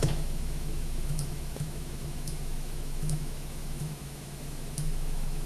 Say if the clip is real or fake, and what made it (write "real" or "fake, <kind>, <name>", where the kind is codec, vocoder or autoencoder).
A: fake, autoencoder, DAC-VAE